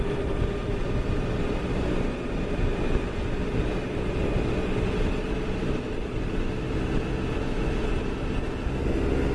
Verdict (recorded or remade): recorded